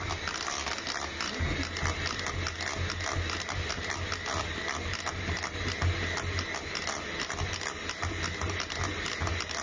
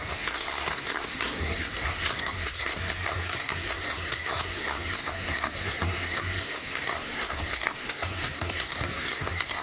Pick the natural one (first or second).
first